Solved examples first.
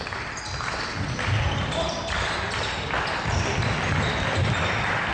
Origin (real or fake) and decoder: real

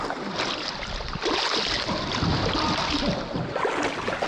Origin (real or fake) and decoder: real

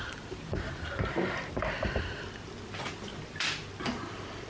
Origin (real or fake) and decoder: real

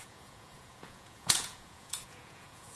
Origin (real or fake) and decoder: fake, vocoder, Vocos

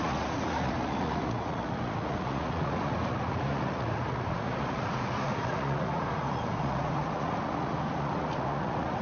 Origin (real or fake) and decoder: fake, vocoder, Vocos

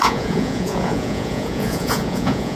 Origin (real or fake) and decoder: fake, vocoder, Vocos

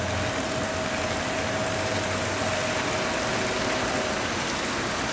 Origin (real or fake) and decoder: real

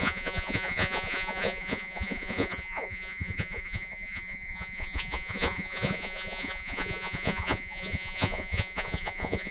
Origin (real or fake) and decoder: fake, vocoder, Vocos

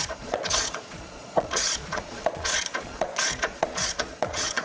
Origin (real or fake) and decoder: fake, vocoder, Vocos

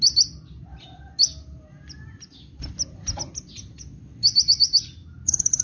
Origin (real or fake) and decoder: real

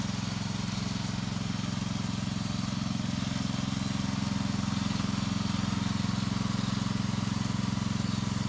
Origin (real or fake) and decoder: real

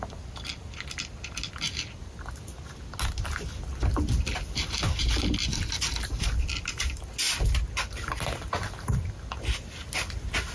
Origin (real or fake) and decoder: real